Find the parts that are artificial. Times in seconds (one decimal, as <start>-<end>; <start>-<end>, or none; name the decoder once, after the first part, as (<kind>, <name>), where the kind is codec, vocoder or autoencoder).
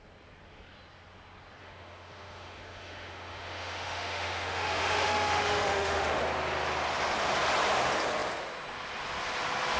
1.6-6.2 (autoencoder, DAC-VAE)